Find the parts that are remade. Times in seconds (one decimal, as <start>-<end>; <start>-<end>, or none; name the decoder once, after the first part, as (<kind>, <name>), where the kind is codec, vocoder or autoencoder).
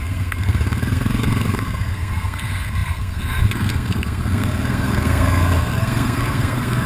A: 0.0-6.9 (codec, SNAC)